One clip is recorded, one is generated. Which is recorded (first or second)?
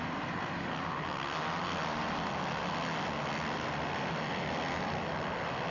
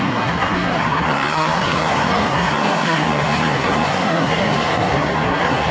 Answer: first